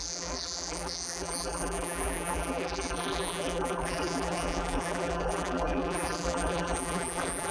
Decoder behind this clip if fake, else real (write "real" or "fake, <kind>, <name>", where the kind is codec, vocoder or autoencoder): fake, vocoder, BigVGAN v2